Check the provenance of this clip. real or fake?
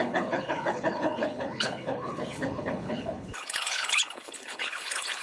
fake